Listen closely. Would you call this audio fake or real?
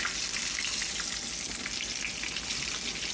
real